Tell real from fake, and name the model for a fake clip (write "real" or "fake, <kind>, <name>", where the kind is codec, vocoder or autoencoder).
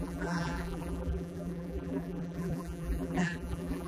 fake, vocoder, BigVGAN v2